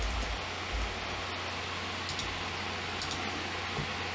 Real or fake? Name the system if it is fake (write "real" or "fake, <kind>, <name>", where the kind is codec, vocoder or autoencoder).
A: real